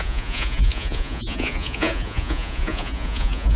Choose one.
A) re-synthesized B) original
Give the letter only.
A